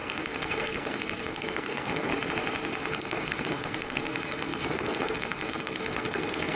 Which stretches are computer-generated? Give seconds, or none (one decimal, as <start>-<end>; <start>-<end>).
0.0-2.1; 2.9-6.6